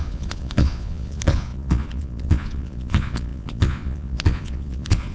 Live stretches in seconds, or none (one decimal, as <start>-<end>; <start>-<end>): none

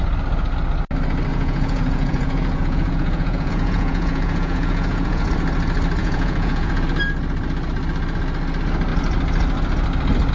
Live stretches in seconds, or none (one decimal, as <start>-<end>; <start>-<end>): 0.0-1.3; 5.3-6.0; 6.8-10.3

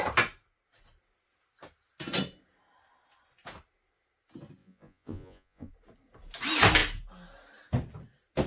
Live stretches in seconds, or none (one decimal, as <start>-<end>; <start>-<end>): 0.0-4.6; 5.7-8.5

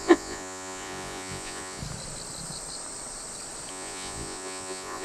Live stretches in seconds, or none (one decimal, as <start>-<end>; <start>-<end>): 1.8-3.7

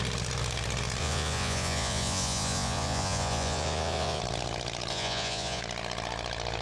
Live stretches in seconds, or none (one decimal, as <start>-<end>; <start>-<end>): 0.0-1.0; 4.2-4.9; 5.6-6.6

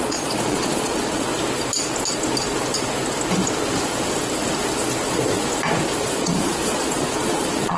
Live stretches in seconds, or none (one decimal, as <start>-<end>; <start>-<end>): 1.3-6.0

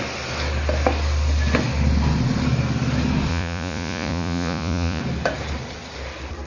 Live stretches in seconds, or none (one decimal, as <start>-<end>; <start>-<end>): 0.0-3.3; 5.0-6.5

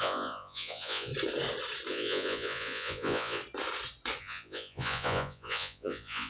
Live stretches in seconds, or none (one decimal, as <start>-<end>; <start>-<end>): 1.1-1.9; 3.4-4.2